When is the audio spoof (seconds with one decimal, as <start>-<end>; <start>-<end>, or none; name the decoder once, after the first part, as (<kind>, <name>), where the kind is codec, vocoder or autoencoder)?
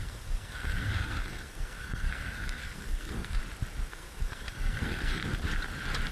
0.0-3.4 (codec, SNAC); 3.9-5.2